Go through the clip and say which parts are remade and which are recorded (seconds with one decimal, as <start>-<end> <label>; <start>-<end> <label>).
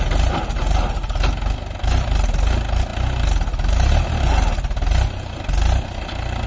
0.0-6.5 recorded